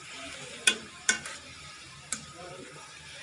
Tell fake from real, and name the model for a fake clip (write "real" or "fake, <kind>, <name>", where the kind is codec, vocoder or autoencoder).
fake, vocoder, BigVGAN v2